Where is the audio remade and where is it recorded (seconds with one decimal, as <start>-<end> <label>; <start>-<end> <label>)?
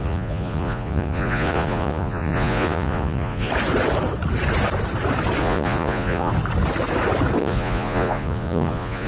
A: 0.0-3.5 remade; 3.5-5.4 recorded; 5.4-6.3 remade; 6.3-7.4 recorded; 7.4-9.1 remade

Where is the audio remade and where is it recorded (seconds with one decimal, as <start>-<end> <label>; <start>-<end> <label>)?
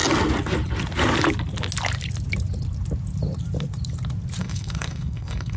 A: 0.0-4.4 recorded; 4.4-5.6 remade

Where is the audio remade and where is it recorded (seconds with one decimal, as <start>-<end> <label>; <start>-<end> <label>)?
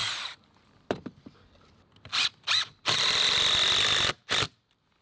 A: 0.0-2.3 remade; 2.3-5.0 recorded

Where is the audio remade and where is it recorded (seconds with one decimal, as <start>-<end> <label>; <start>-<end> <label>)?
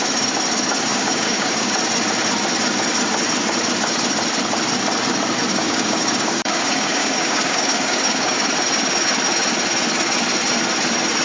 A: 0.0-0.9 recorded; 0.9-1.7 remade; 1.7-5.5 recorded; 5.5-8.4 remade; 8.4-11.2 recorded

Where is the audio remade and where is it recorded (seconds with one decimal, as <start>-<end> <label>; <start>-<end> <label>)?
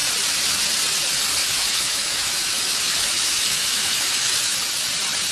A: 0.0-1.4 recorded; 1.4-4.6 remade; 4.6-5.3 recorded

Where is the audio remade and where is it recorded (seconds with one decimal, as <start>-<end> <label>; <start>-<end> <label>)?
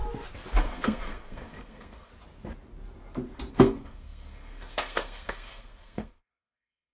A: 0.0-0.6 recorded; 0.6-2.1 remade; 2.1-3.5 recorded; 3.5-6.9 remade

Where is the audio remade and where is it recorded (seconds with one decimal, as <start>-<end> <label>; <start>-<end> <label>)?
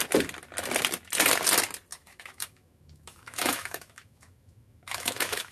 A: 0.0-1.9 recorded; 1.9-5.5 remade